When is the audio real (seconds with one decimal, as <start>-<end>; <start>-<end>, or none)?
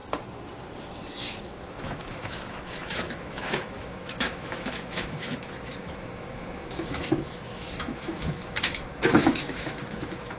0.0-1.4